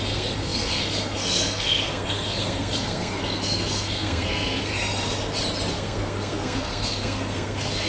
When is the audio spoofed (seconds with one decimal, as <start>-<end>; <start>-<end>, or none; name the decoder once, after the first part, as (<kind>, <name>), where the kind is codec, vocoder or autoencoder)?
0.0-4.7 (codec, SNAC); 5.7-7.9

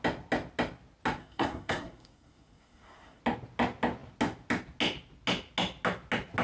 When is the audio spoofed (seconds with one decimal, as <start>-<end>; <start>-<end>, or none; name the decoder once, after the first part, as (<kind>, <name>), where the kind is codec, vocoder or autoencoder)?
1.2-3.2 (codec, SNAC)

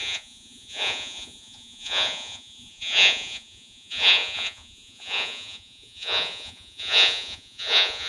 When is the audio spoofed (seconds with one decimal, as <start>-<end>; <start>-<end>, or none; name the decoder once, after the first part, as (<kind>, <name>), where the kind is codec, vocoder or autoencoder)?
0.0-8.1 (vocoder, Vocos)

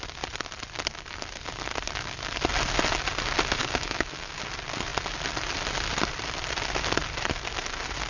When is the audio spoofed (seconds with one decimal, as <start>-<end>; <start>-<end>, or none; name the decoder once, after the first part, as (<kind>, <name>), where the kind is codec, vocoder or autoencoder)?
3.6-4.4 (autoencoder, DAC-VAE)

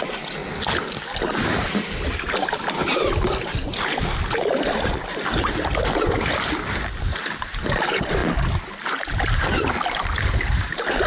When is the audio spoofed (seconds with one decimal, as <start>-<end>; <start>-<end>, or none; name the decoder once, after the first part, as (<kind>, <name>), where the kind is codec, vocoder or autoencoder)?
none